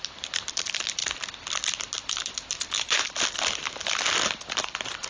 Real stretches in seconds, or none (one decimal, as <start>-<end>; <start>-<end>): 1.0-3.3